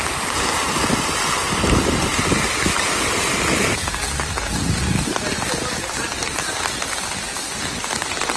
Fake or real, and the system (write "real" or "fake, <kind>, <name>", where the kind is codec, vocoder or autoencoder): real